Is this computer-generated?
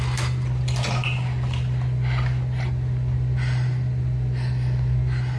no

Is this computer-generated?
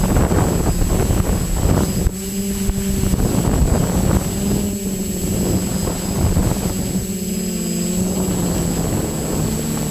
no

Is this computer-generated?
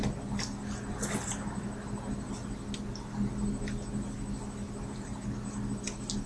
no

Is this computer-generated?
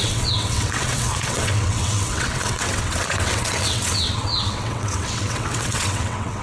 yes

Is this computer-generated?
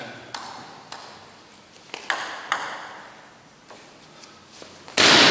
no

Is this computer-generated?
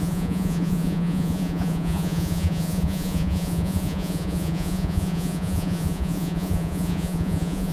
yes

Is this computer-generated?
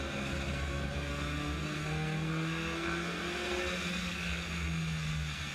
yes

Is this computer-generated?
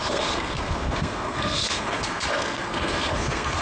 yes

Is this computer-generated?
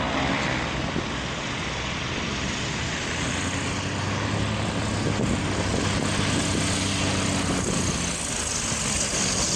no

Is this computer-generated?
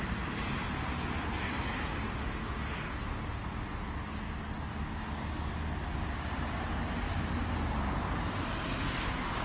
no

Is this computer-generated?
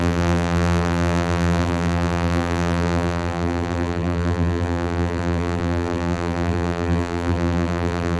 yes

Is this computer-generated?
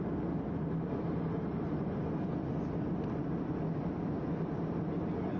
no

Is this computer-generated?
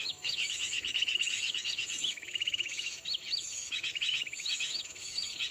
yes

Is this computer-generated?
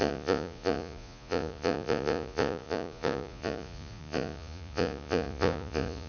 yes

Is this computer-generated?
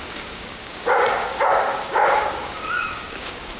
yes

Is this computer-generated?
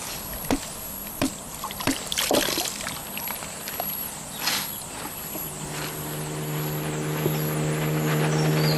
yes